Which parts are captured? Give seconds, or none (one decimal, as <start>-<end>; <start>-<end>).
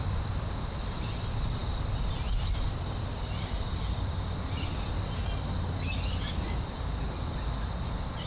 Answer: 0.0-8.3